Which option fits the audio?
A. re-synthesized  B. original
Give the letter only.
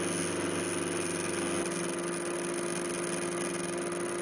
B